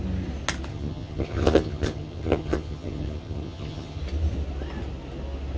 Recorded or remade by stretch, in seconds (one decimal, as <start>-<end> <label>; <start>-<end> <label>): 0.0-0.7 recorded; 0.7-4.0 remade; 4.0-5.6 recorded

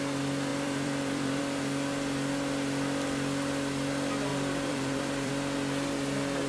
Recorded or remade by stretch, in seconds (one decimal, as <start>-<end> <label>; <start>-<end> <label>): 0.0-0.5 recorded; 0.5-1.4 remade; 1.4-4.3 recorded; 4.3-5.3 remade; 5.3-6.5 recorded

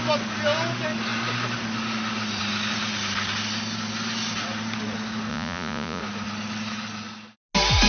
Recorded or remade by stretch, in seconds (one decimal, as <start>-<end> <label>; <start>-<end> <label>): 0.0-5.3 recorded; 5.3-6.0 remade; 6.0-7.9 recorded

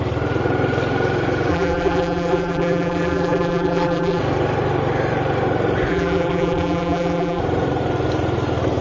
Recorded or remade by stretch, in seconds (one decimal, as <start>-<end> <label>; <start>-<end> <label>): 0.0-1.5 recorded; 1.5-4.2 remade; 4.2-5.9 recorded; 5.9-7.4 remade; 7.4-8.8 recorded